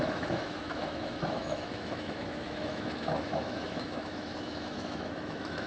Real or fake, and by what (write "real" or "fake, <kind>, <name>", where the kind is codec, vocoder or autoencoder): fake, autoencoder, DAC-VAE